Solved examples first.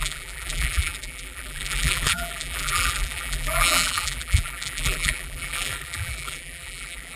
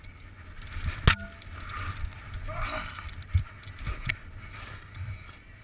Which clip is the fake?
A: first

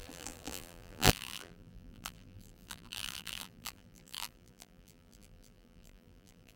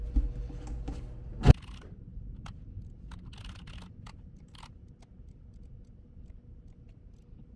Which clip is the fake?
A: first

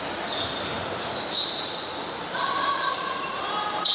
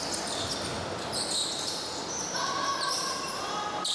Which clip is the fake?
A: first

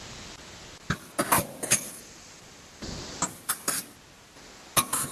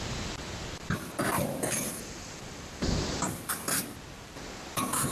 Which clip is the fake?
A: second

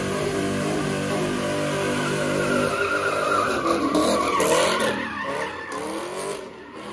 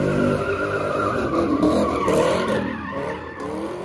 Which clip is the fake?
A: second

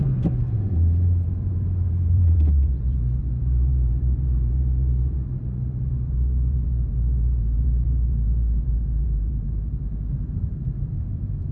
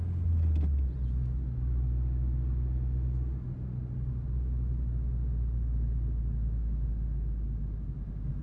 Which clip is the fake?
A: first